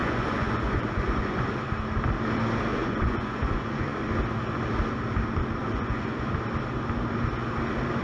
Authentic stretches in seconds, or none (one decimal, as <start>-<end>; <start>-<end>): 1.5-2.7; 4.1-5.6; 6.3-8.0